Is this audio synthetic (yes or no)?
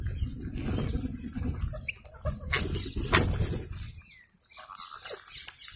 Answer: no